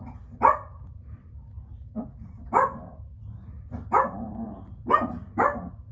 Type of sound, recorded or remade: recorded